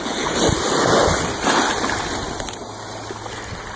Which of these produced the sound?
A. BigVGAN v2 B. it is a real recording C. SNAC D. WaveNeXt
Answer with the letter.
B